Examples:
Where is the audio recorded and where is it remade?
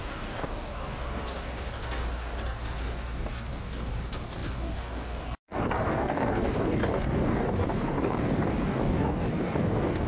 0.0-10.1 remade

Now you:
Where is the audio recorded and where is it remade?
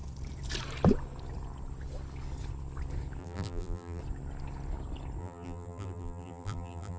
0.0-3.2 recorded; 3.2-4.0 remade; 4.0-5.2 recorded; 5.2-7.0 remade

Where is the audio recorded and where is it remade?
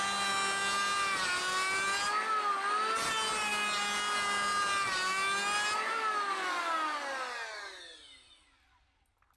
0.0-9.4 recorded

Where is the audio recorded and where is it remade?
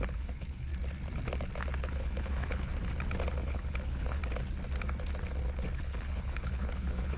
0.0-0.7 remade; 0.7-1.8 recorded; 1.8-2.7 remade; 2.7-3.3 recorded; 3.3-4.2 remade; 4.2-5.7 recorded; 5.7-7.2 remade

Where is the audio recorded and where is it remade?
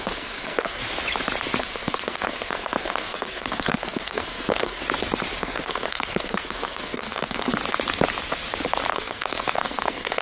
0.0-0.8 remade; 0.8-1.6 recorded; 1.6-4.8 remade; 4.8-5.4 recorded; 5.4-7.5 remade; 7.5-8.9 recorded; 8.9-10.2 remade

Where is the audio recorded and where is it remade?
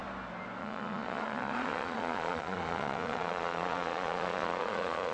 0.0-0.6 recorded; 0.6-5.1 remade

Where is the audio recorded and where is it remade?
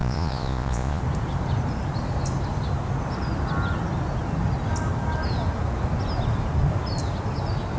0.0-1.0 remade; 1.0-7.8 recorded